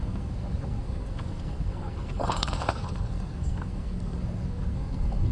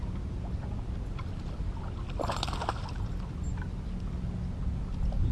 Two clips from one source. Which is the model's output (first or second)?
first